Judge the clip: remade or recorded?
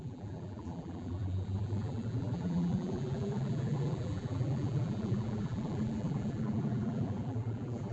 remade